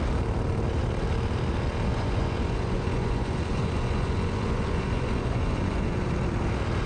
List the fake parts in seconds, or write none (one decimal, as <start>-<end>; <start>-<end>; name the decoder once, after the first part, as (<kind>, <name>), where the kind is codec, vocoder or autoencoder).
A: 1.9-6.0 (vocoder, Vocos)